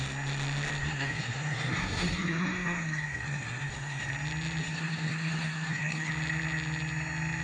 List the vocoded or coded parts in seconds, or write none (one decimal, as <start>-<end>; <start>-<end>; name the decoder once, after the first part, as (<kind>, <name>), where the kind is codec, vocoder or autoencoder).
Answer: 0.8-4.1 (codec, SNAC); 4.6-6.1